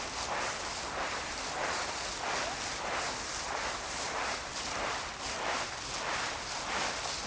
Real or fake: real